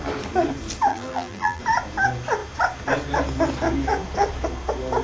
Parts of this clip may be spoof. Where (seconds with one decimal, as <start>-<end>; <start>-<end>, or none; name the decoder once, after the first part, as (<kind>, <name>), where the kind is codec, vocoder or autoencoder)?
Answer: 0.9-1.6 (vocoder, BigVGAN v2)